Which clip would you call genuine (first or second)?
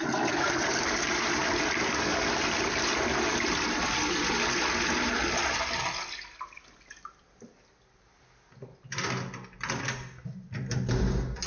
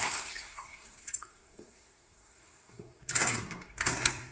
first